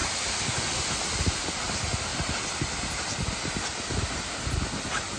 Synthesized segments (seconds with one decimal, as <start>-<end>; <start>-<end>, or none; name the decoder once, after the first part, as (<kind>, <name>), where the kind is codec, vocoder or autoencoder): 0.0-0.6 (vocoder, BigVGAN v2)